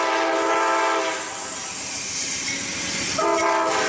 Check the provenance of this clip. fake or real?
real